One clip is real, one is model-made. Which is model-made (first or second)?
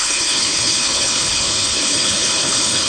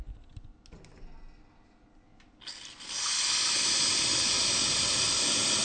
first